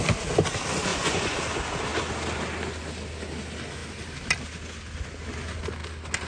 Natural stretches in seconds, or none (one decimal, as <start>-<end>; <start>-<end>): 0.0-0.9; 1.4-6.3